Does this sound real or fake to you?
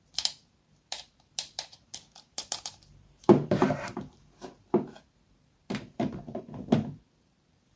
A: fake